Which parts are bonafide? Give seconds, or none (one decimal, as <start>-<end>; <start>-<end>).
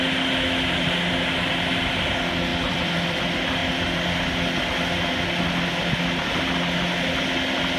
0.0-2.5; 3.2-7.8